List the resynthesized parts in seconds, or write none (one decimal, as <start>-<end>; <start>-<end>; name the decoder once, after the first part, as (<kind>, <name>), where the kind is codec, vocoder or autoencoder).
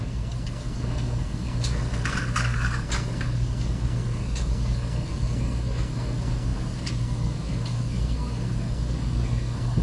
0.0-9.8 (codec, SNAC)